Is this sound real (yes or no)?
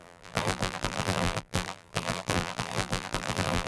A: no